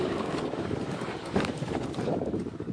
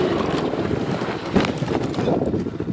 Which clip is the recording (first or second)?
second